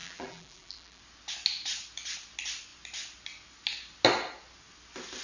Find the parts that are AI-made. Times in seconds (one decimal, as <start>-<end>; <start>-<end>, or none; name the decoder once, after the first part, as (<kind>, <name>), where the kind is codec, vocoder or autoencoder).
0.0-1.0 (vocoder, BigVGAN v2)